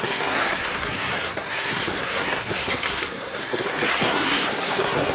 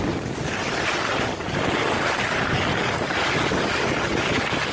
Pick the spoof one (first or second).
first